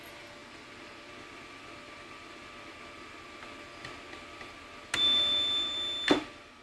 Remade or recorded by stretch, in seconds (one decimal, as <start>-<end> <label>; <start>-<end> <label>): 0.0-6.6 recorded